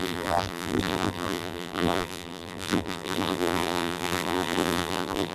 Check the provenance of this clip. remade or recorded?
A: remade